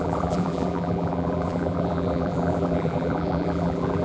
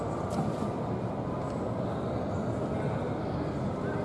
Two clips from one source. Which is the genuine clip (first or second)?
second